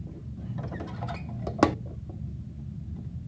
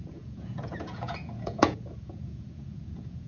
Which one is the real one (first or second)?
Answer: first